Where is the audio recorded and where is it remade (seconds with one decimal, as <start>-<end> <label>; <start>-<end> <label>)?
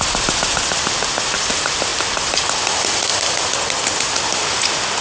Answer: 0.0-1.9 recorded; 1.9-2.4 remade; 2.4-3.1 recorded; 3.1-4.0 remade; 4.0-5.0 recorded